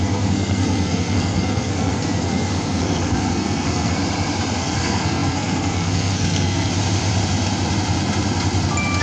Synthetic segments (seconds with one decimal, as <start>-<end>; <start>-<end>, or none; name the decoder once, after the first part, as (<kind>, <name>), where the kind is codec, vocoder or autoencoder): 0.0-4.0 (codec, SNAC); 4.6-6.7